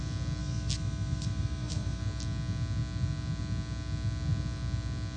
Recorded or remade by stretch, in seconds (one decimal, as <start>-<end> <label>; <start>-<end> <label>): 0.0-0.4 recorded; 0.4-2.0 remade; 2.0-5.2 recorded